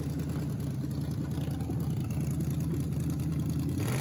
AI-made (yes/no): no